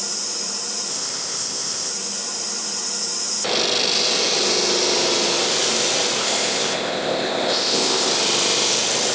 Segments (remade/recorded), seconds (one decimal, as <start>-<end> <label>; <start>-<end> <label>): 0.0-0.9 recorded; 0.9-1.9 remade; 1.9-6.2 recorded; 6.2-8.1 remade; 8.1-9.1 recorded